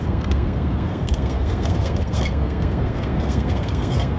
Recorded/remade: remade